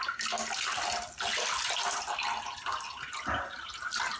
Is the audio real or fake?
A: real